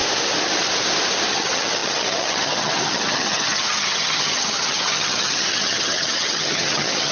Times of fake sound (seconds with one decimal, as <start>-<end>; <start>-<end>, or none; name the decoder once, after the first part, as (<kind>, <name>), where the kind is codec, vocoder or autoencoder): 1.3-7.1 (vocoder, HiFi-GAN)